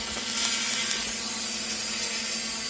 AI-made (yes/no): no